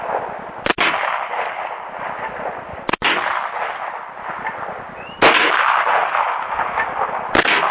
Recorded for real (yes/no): yes